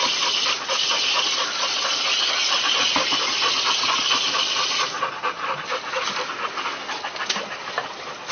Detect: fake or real real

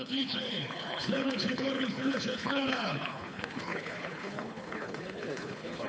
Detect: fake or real fake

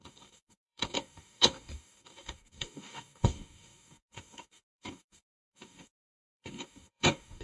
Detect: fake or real fake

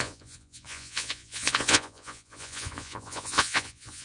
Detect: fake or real fake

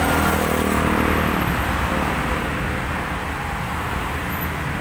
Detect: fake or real real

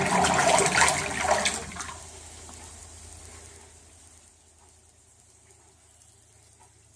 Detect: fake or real real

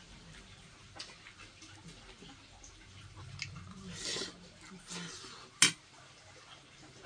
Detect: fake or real real